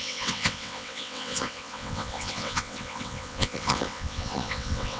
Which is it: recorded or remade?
remade